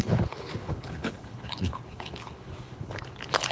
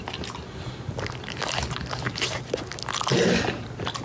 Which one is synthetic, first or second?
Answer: first